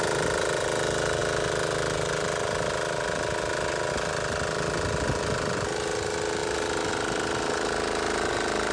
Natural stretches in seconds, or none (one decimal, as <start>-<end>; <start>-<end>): 0.0-8.7